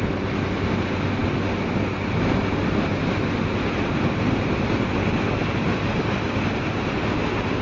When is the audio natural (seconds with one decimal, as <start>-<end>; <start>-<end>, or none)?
0.0-7.6

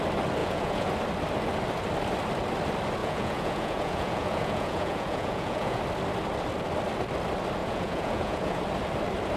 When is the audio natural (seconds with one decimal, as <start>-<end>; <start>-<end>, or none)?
0.0-0.4; 0.9-3.0; 5.8-7.6; 8.6-9.4

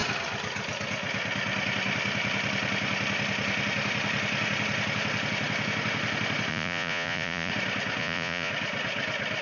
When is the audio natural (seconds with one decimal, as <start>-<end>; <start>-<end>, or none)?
0.0-6.5; 7.5-8.0; 8.5-9.4

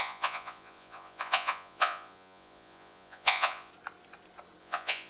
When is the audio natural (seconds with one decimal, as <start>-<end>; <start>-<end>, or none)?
3.7-4.6

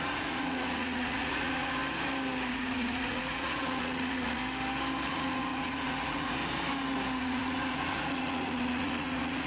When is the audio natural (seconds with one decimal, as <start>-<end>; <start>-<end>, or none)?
1.8-2.5; 4.4-5.1; 6.4-7.2

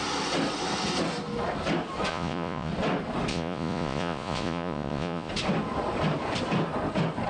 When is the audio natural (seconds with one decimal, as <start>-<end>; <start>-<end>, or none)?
0.0-2.1; 2.7-3.3; 5.3-7.3